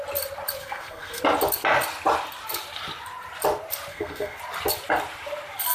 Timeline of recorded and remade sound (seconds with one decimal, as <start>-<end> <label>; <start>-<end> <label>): 0.0-0.6 recorded; 0.6-1.2 remade; 1.2-3.9 recorded; 3.9-4.4 remade; 4.4-5.7 recorded